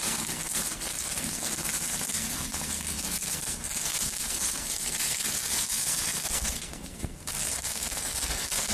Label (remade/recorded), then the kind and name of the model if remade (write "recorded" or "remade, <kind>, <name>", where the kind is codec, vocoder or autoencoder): remade, codec, SNAC